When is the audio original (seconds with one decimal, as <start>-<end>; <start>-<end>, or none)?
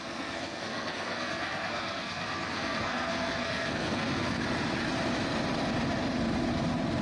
4.4-7.0